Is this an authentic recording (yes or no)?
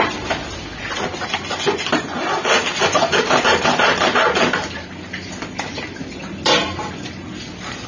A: yes